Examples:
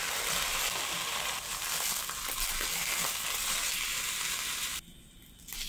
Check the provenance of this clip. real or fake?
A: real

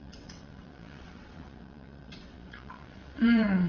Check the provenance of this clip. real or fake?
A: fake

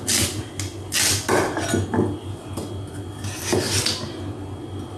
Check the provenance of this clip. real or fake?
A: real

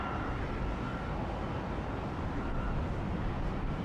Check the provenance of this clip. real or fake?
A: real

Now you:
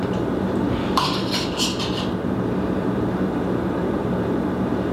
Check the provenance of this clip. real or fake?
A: fake